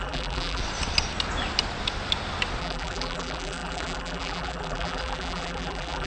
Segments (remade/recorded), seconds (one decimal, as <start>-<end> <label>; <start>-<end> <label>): 0.0-0.6 remade; 0.6-2.6 recorded; 2.6-6.1 remade